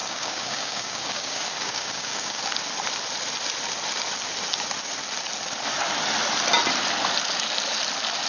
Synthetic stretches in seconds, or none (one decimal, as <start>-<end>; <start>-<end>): 0.0-2.4

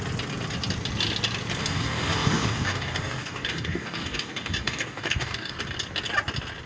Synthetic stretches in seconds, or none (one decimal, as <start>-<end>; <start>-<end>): 1.6-5.5